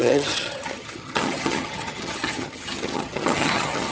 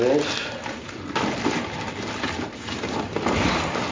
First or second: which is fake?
first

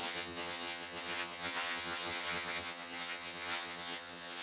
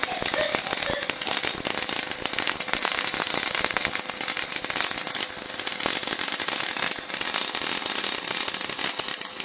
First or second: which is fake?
first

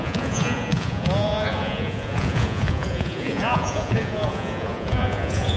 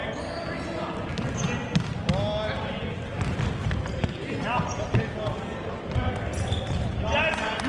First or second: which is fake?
first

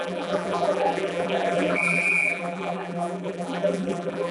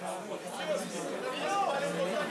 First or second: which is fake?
first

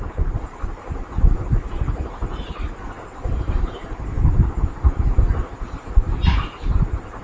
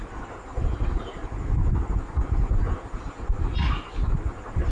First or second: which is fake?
first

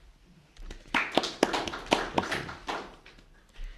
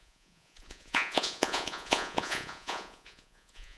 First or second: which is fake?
second